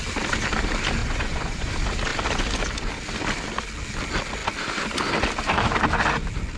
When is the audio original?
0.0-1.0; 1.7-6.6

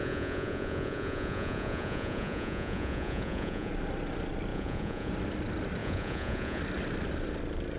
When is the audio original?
3.7-4.5; 5.1-5.8; 6.6-7.8

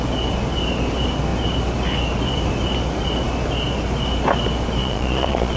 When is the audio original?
0.0-4.8

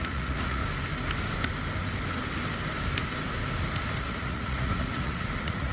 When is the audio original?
0.6-4.0

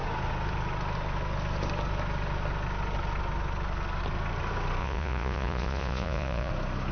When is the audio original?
0.0-4.8; 6.5-6.9

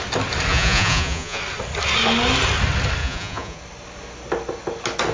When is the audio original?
0.0-0.5; 1.4-3.0; 3.6-5.1